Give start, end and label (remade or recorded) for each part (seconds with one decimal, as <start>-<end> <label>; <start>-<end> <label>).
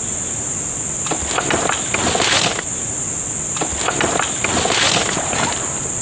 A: 0.0-6.0 recorded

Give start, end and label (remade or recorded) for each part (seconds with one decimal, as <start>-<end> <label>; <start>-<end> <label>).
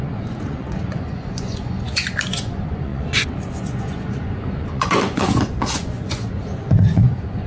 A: 0.0-7.5 remade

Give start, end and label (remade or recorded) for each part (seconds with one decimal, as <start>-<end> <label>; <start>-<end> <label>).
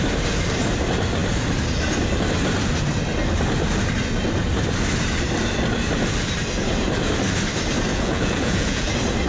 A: 0.0-7.9 recorded; 7.9-8.9 remade; 8.9-9.3 recorded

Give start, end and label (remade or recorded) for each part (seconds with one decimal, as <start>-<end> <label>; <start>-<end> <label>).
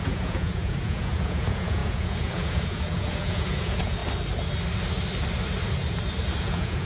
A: 0.0-4.0 remade; 4.0-6.4 recorded; 6.4-6.9 remade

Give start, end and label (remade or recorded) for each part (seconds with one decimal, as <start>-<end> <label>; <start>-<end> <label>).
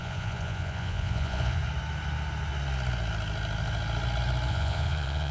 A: 0.0-1.6 remade; 1.6-4.5 recorded; 4.5-5.3 remade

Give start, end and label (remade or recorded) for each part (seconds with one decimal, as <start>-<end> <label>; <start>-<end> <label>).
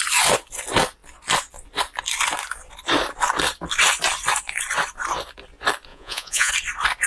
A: 0.0-5.9 recorded; 5.9-6.5 remade; 6.5-7.1 recorded